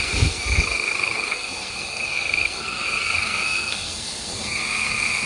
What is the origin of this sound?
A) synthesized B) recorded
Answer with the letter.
A